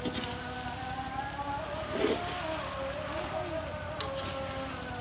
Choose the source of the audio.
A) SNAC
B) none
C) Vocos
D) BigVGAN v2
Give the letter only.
B